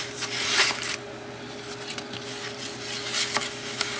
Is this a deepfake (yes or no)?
no